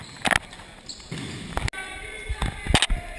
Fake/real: real